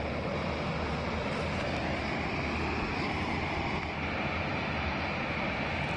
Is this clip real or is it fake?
real